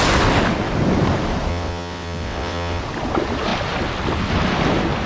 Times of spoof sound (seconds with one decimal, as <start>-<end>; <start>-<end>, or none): 1.5-2.8